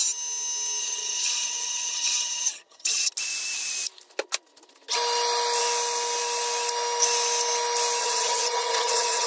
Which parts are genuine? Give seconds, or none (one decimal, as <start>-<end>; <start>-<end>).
0.0-0.8; 3.1-8.0